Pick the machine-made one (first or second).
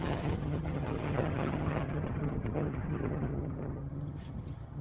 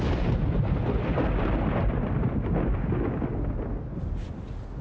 first